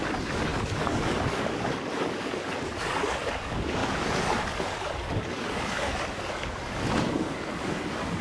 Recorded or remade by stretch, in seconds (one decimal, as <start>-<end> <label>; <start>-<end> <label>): 0.0-8.2 remade